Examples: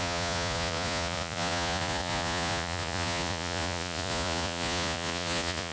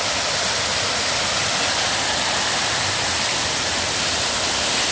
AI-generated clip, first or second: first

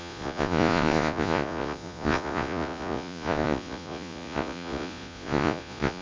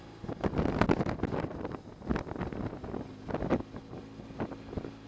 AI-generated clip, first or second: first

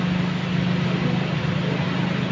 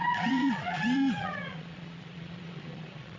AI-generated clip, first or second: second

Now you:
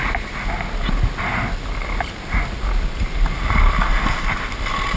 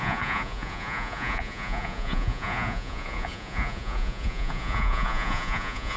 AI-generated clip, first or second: second